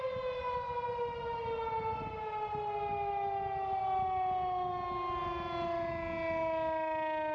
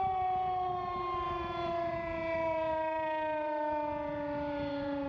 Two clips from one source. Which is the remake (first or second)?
second